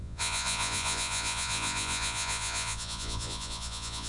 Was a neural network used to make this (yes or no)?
yes